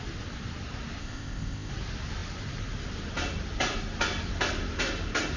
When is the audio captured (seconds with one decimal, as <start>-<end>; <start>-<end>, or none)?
0.0-1.0; 1.7-5.4